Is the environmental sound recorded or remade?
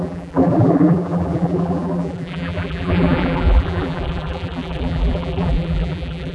remade